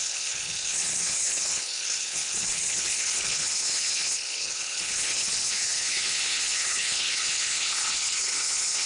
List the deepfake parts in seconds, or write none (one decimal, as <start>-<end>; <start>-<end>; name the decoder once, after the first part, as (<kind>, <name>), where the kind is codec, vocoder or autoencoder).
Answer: 0.0-8.9 (codec, HILCodec)